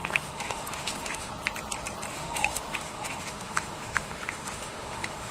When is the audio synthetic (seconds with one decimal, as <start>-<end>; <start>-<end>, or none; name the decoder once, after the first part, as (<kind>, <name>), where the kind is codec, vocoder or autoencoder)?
0.0-1.3 (autoencoder, DAC-VAE); 2.1-5.3